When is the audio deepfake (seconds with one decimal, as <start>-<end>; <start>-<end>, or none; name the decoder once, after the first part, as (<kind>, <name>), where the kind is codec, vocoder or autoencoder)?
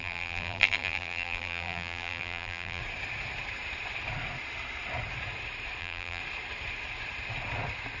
0.0-2.8 (vocoder, BigVGAN v2); 5.8-6.2